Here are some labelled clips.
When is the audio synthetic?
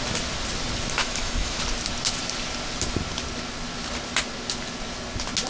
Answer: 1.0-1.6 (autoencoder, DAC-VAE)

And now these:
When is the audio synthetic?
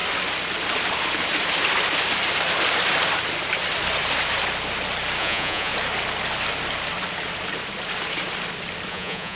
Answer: 5.2-5.7 (vocoder, Vocos); 8.9-9.4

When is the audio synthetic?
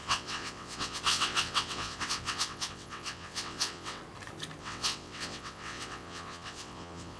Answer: 0.0-4.0 (vocoder, WaveNeXt); 4.6-7.2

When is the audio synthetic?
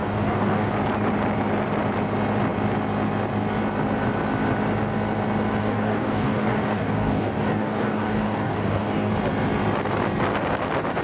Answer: 0.0-0.7 (codec, DAC); 5.6-9.1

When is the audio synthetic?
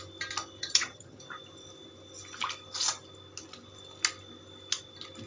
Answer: 0.6-1.2 (vocoder, HiFi-GAN)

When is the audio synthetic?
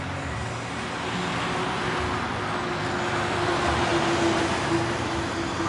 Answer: none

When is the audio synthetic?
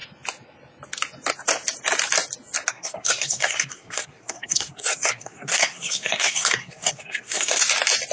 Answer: 2.7-7.6 (codec, SNAC)